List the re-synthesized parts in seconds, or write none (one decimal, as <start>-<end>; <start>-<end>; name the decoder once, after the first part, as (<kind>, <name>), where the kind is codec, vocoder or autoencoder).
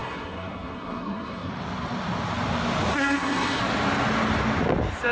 0.0-1.5 (codec, SNAC); 2.9-3.6